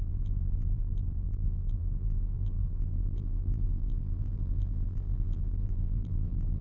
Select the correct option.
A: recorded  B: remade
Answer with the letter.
B